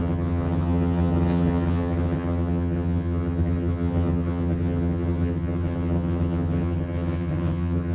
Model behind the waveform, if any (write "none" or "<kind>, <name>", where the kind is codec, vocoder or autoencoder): vocoder, HiFi-GAN